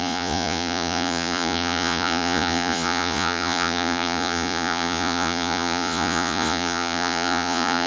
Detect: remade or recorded remade